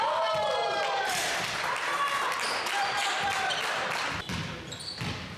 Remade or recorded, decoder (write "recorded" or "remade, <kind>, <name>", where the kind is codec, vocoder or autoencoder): recorded